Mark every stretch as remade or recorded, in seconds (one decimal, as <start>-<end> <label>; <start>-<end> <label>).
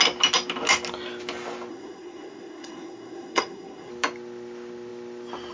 0.0-1.7 recorded; 1.7-3.9 remade; 3.9-5.5 recorded